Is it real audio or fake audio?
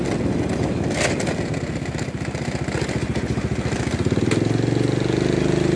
real